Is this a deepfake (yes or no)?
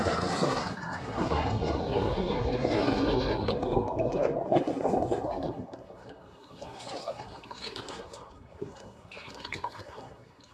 yes